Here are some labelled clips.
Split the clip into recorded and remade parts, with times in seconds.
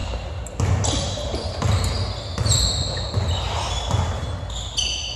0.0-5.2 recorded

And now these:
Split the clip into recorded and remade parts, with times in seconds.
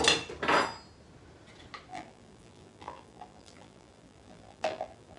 0.0-1.9 recorded; 1.9-5.2 remade